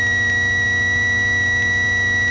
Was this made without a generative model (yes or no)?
yes